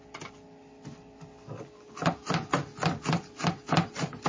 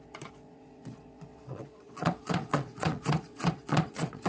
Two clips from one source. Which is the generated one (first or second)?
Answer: second